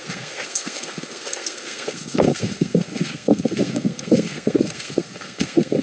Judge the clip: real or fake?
fake